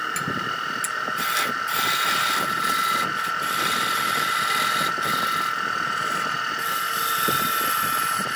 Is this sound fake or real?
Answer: real